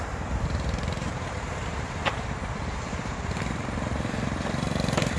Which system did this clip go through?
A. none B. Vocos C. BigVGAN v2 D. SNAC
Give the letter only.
C